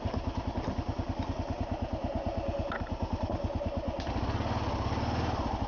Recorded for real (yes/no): yes